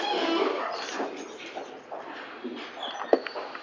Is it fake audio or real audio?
real